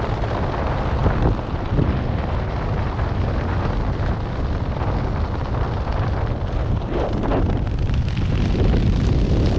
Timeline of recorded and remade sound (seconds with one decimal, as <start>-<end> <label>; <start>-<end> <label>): 0.0-9.6 recorded